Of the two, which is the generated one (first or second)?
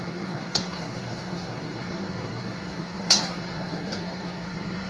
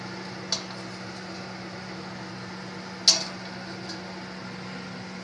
first